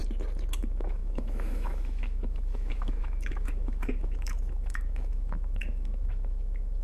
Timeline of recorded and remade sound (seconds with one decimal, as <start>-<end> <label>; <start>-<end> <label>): 0.0-0.6 recorded; 0.6-6.8 remade